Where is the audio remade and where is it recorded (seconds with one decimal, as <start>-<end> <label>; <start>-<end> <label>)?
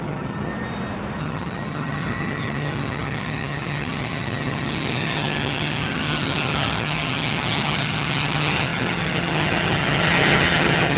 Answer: 0.0-0.5 remade; 0.5-1.2 recorded; 1.2-11.0 remade